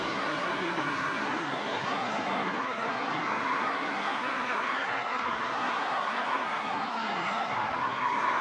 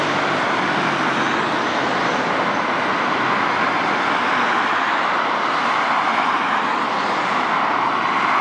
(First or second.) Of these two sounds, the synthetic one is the first